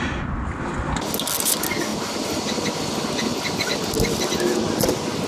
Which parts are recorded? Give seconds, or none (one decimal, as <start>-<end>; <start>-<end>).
0.0-5.3